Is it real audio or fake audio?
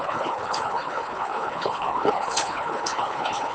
fake